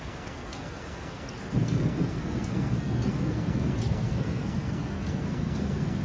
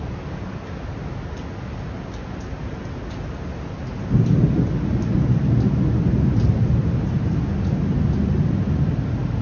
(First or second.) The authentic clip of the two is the second